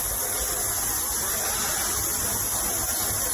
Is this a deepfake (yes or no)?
no